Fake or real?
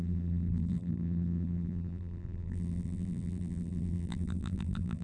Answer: fake